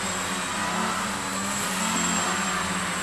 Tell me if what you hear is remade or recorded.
recorded